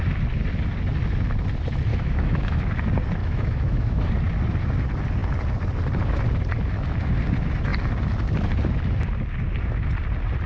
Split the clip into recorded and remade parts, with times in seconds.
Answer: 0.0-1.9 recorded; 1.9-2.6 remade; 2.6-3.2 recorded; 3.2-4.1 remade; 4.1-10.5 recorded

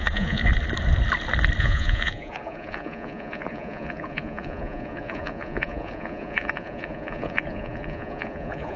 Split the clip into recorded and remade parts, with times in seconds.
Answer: 0.0-0.4 remade; 0.4-1.6 recorded; 1.6-8.8 remade

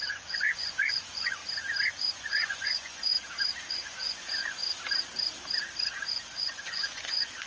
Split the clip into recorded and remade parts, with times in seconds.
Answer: 0.0-1.4 remade; 1.4-1.9 recorded; 1.9-3.1 remade; 3.1-3.7 recorded; 3.7-4.6 remade; 4.6-5.9 recorded; 5.9-7.5 remade

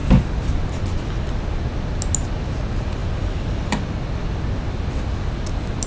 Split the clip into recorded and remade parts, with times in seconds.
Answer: 0.0-5.9 recorded

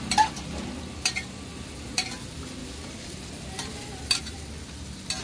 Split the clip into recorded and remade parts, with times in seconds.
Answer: 0.0-5.2 recorded

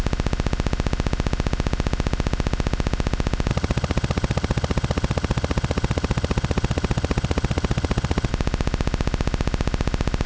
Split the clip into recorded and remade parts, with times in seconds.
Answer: 0.0-3.5 recorded; 3.5-8.3 remade; 8.3-10.3 recorded

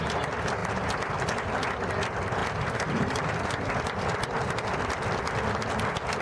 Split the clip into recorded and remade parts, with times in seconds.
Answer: 0.0-6.2 recorded